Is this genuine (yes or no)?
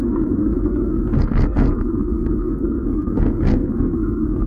no